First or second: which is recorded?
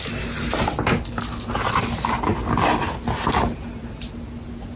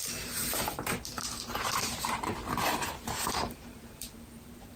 first